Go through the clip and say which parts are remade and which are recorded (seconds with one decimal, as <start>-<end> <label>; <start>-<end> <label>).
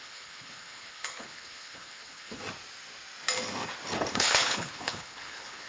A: 0.0-2.4 remade; 2.4-4.1 recorded; 4.1-5.7 remade